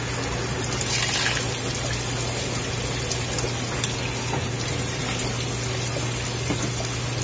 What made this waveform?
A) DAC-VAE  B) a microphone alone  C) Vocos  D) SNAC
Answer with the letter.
B